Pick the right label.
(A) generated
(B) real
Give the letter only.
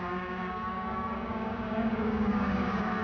A